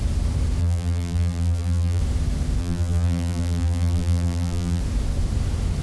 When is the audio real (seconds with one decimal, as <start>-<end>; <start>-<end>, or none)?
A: 0.0-0.6; 2.0-2.6; 4.8-5.8